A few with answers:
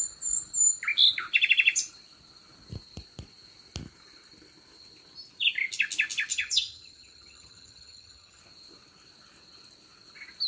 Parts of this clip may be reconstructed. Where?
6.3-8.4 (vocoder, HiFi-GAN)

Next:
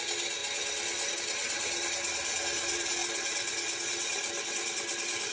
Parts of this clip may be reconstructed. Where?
none

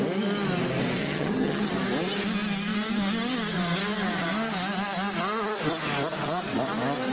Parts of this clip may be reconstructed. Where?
1.0-1.7 (vocoder, HiFi-GAN)

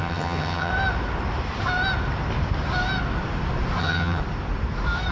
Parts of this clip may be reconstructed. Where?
0.0-0.7 (vocoder, HiFi-GAN); 3.8-4.2

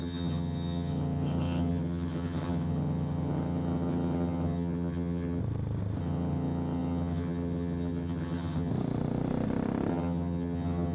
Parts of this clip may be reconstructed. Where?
0.0-5.4 (vocoder, HiFi-GAN); 6.0-8.7; 9.9-10.9